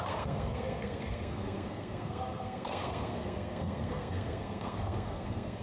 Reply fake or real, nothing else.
fake